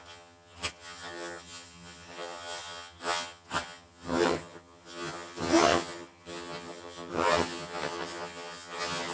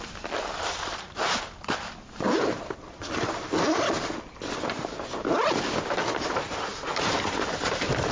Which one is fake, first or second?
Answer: first